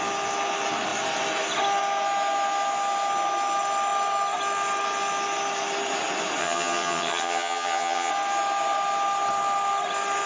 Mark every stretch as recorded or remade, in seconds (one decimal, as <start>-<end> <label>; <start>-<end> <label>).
0.0-6.4 recorded; 6.4-8.1 remade; 8.1-10.3 recorded

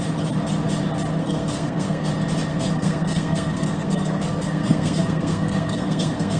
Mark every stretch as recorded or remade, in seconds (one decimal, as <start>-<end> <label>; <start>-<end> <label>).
0.0-1.2 recorded; 1.2-2.1 remade; 2.1-2.5 recorded; 2.5-6.4 remade